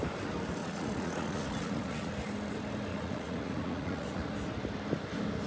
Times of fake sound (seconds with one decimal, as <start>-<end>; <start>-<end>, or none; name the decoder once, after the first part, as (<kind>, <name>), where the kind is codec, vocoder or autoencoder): 0.6-2.1 (vocoder, Vocos); 2.9-4.3